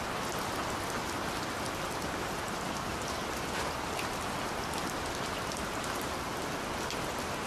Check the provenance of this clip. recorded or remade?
recorded